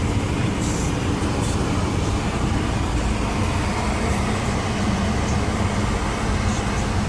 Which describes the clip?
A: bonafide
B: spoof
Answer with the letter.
A